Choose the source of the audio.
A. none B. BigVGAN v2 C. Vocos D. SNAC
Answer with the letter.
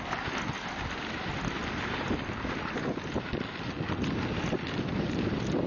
A